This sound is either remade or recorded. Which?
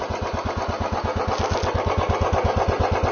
recorded